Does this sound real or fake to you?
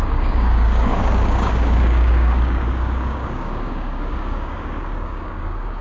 fake